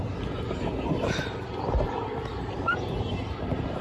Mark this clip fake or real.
fake